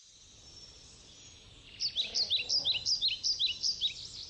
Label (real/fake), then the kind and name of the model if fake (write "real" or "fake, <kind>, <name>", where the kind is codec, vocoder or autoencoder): real